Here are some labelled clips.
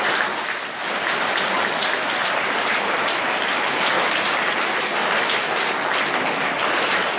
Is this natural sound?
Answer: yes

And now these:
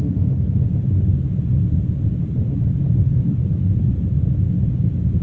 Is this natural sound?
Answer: yes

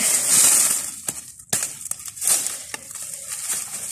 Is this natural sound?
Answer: yes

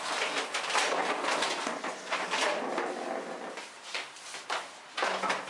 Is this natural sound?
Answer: yes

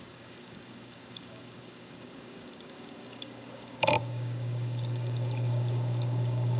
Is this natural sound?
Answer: no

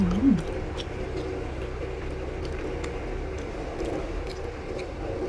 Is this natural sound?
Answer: yes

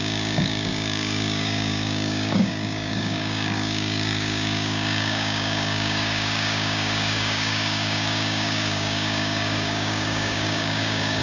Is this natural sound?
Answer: no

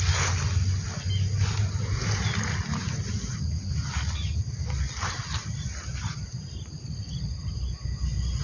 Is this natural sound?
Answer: yes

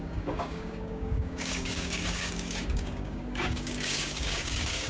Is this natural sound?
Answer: no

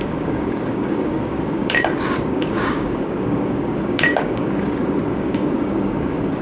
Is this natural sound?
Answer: no